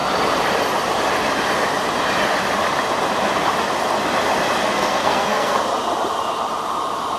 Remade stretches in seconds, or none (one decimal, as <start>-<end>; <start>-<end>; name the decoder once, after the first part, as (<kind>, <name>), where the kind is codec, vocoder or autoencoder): 4.6-5.6 (codec, SNAC)